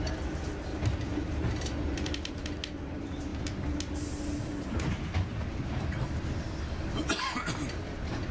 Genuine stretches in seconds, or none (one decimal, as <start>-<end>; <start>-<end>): 0.0-0.7; 2.3-8.3